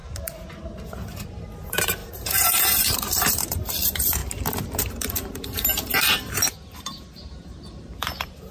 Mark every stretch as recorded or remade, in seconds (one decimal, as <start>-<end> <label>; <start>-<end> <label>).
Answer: 0.0-1.2 recorded; 1.2-4.2 remade; 4.2-4.8 recorded; 4.8-8.5 remade